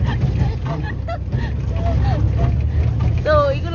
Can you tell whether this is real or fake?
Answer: real